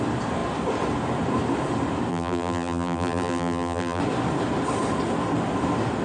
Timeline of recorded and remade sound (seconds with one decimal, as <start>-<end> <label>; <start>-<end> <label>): 0.0-2.1 recorded; 2.1-4.0 remade; 4.0-6.0 recorded